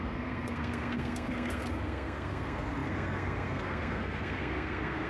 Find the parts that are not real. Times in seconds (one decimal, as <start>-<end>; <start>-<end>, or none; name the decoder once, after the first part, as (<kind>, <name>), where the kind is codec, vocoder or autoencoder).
0.0-5.1 (codec, SNAC)